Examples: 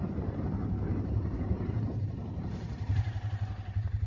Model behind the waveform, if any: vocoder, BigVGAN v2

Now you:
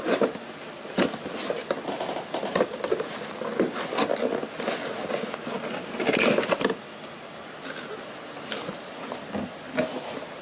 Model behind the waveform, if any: none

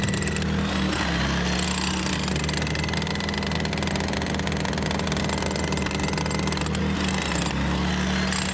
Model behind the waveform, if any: none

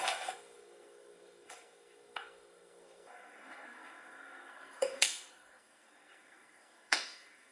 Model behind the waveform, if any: codec, SNAC